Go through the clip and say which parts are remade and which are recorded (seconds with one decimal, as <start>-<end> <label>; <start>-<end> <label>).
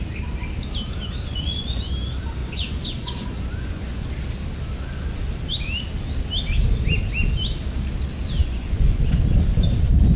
0.0-1.3 recorded; 1.3-1.8 remade; 1.8-2.4 recorded; 2.4-4.1 remade; 4.1-8.4 recorded; 8.4-9.2 remade; 9.2-10.2 recorded